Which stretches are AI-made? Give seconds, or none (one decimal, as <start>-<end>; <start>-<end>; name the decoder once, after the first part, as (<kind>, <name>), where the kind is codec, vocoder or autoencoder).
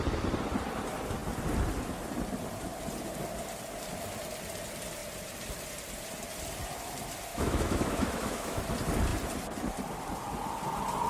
7.3-8.6 (autoencoder, DAC-VAE)